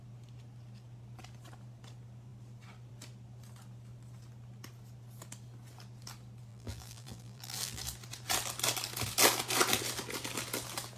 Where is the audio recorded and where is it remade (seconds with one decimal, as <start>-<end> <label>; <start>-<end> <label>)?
0.0-6.5 recorded; 6.5-7.8 remade; 7.8-11.0 recorded

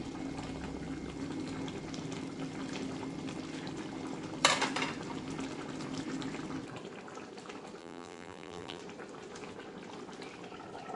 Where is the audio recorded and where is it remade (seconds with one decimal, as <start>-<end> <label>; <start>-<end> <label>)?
0.0-7.8 recorded; 7.8-8.8 remade; 8.8-11.0 recorded

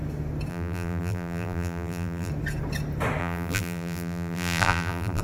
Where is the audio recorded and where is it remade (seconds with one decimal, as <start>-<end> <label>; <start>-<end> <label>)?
0.0-0.5 recorded; 0.5-2.3 remade; 2.3-3.2 recorded; 3.2-5.2 remade

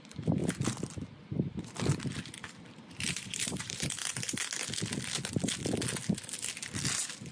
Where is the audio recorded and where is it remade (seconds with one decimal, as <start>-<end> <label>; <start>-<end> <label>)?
0.0-0.4 remade; 0.4-2.9 recorded; 2.9-4.0 remade; 4.0-7.3 recorded

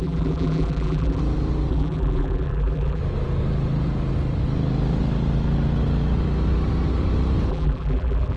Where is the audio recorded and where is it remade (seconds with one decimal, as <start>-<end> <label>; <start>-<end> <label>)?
0.0-1.2 remade; 1.2-1.7 recorded; 1.7-3.0 remade; 3.0-7.5 recorded; 7.5-8.4 remade